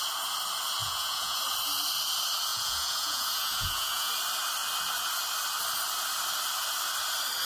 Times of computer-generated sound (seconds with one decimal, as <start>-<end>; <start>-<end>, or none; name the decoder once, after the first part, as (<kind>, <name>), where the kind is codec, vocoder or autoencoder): 0.8-1.4 (vocoder, Vocos); 2.5-4.1